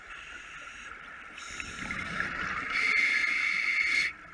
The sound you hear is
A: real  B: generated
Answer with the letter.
A